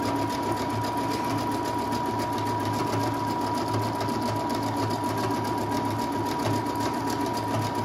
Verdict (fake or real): real